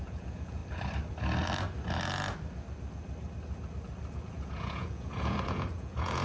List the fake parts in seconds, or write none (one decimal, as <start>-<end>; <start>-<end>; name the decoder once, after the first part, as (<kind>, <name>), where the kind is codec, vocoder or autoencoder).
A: 0.0-0.6 (vocoder, Vocos); 4.3-6.2